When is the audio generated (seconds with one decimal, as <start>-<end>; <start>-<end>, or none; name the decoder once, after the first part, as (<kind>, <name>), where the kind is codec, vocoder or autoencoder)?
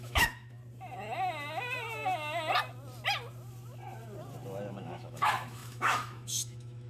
0.0-0.6 (autoencoder, DAC-VAE); 4.7-6.9